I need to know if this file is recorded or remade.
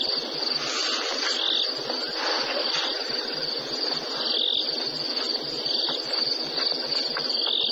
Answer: recorded